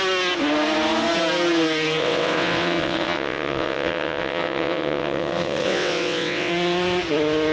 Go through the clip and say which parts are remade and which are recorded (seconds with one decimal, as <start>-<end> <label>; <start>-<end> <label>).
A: 0.0-2.0 recorded; 2.0-6.5 remade; 6.5-7.5 recorded